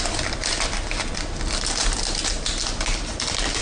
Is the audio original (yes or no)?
yes